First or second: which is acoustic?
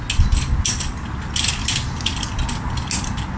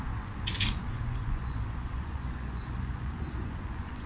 first